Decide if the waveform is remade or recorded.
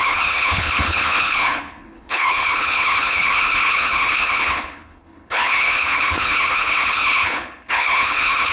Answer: remade